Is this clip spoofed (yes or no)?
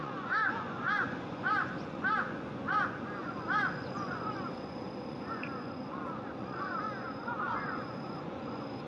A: yes